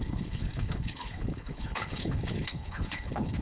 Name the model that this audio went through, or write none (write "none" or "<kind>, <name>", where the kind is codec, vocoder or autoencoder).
codec, HILCodec